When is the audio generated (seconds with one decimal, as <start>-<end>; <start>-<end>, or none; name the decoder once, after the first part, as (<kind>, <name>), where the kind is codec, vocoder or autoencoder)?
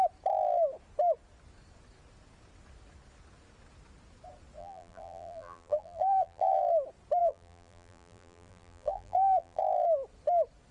4.6-6.6 (vocoder, BigVGAN v2); 7.2-9.6